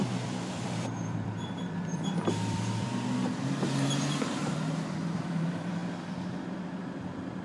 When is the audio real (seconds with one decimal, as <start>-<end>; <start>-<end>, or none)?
5.8-6.3